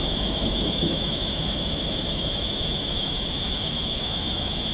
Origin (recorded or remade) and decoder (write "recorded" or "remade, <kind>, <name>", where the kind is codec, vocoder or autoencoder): remade, autoencoder, DAC-VAE